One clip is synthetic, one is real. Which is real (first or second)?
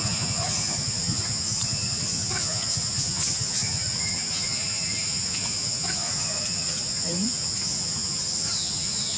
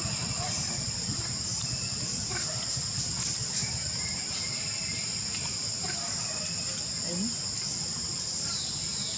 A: second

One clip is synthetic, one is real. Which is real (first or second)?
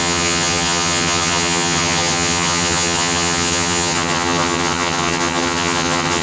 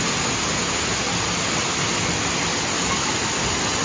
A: second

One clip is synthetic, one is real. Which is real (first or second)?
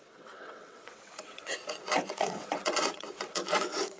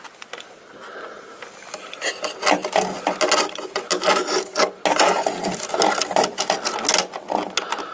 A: second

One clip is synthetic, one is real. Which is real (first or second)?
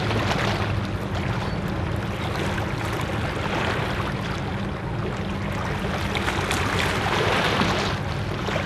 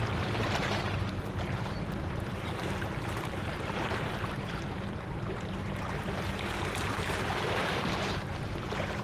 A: first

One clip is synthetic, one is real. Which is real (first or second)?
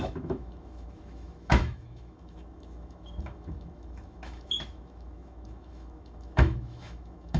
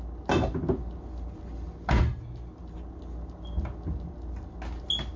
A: second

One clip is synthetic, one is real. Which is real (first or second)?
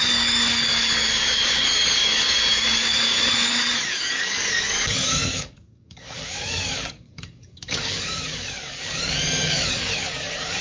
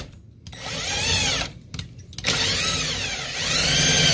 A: second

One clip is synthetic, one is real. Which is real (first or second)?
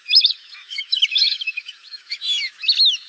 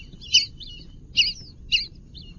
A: second